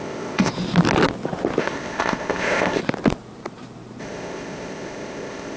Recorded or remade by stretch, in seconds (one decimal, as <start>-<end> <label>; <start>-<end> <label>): 0.0-0.5 remade; 0.5-1.6 recorded; 1.6-2.8 remade; 2.8-4.0 recorded; 4.0-5.6 remade

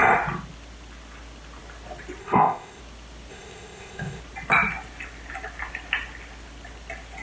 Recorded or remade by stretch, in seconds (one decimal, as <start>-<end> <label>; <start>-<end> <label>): 0.0-2.2 recorded; 2.2-2.8 remade; 2.8-3.3 recorded; 3.3-4.2 remade; 4.2-7.2 recorded

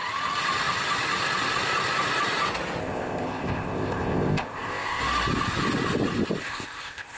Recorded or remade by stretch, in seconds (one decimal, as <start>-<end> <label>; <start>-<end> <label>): 0.0-2.8 recorded; 2.8-5.0 remade; 5.0-6.4 recorded; 6.4-7.2 remade

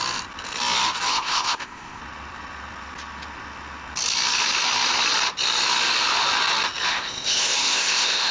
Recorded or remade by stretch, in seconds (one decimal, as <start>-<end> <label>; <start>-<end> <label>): 0.0-1.1 recorded; 1.1-2.0 remade; 2.0-6.9 recorded; 6.9-8.3 remade

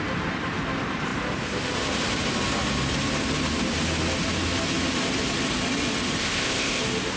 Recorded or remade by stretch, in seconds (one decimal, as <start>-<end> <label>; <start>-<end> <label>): 0.0-6.2 recorded; 6.2-6.8 remade; 6.8-7.2 recorded

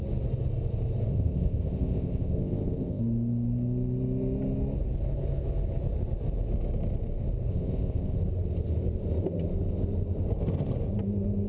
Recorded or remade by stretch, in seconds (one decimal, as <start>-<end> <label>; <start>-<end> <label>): 0.0-1.1 recorded; 1.1-3.0 remade; 3.0-7.5 recorded; 7.5-8.2 remade; 8.2-11.5 recorded

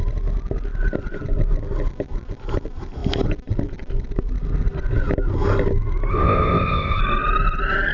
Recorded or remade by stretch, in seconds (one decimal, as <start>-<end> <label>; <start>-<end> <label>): 0.0-6.1 recorded; 6.1-7.0 remade; 7.0-7.9 recorded

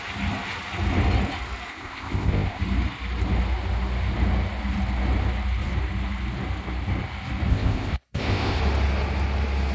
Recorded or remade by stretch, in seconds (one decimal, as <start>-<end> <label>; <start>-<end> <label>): 0.0-1.7 recorded; 1.7-2.6 remade; 2.6-7.5 recorded; 7.5-8.6 remade; 8.6-9.7 recorded